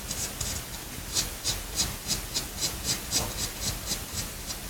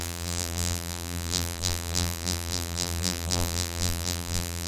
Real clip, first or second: first